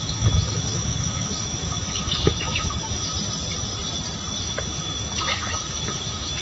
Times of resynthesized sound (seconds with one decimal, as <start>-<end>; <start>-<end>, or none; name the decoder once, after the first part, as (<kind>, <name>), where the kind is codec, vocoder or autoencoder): 0.0-3.1 (autoencoder, DAC-VAE); 4.4-6.4